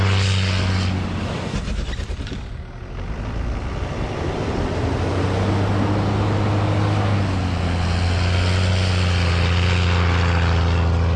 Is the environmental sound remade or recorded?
recorded